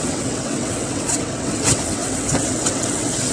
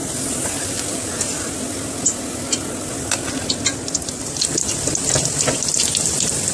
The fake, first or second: first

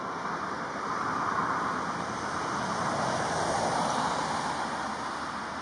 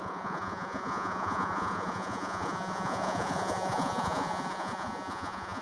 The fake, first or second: second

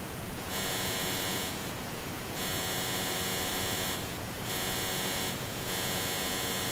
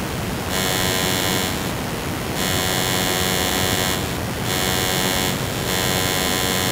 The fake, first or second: first